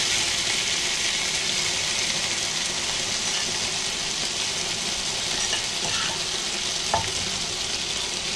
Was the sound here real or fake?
real